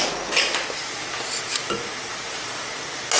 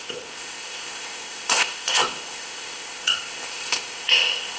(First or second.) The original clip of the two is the first